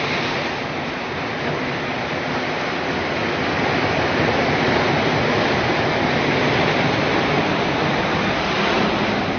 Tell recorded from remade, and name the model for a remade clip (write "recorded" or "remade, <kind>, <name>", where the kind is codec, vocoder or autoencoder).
recorded